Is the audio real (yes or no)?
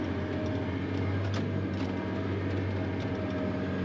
yes